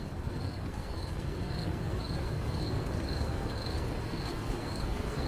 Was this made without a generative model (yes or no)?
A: no